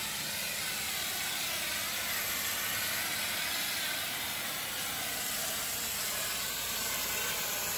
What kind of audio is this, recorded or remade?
recorded